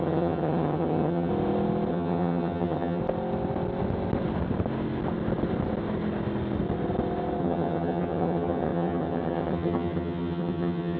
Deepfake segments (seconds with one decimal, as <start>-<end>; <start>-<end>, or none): 0.0-1.3; 1.9-3.0; 7.4-11.0